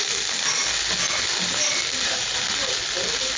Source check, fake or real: real